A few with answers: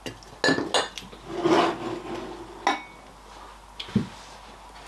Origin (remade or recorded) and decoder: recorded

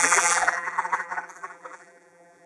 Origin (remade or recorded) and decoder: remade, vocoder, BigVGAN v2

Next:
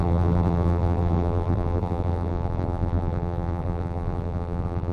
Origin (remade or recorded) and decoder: remade, vocoder, BigVGAN v2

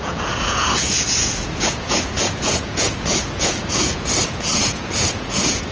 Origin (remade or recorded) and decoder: remade, vocoder, Vocos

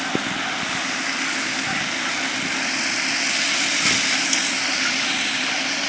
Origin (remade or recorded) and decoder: recorded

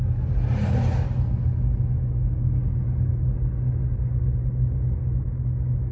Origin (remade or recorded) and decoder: recorded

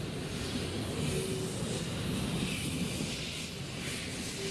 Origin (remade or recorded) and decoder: recorded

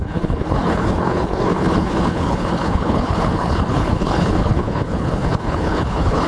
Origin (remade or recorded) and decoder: remade, codec, HILCodec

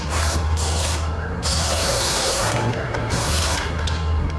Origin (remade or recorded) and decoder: remade, codec, SNAC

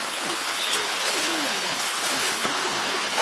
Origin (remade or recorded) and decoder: remade, codec, HILCodec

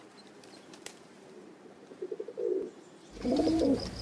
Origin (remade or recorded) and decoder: remade, vocoder, BigVGAN v2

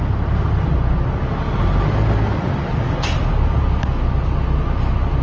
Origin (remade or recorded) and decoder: recorded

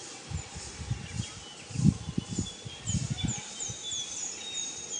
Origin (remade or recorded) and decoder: recorded